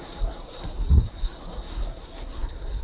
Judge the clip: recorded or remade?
remade